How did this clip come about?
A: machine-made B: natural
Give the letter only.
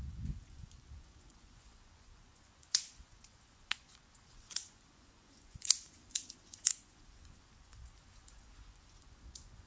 A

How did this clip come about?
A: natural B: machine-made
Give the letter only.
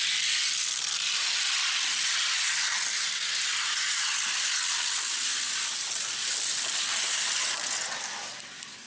A